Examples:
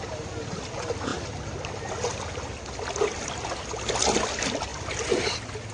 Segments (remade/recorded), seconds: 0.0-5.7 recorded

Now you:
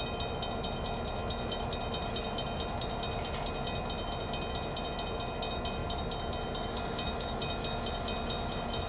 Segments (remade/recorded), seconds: 0.0-8.9 recorded